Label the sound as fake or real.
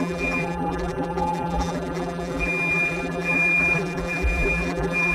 fake